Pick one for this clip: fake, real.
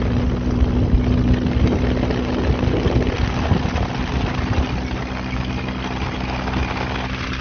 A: real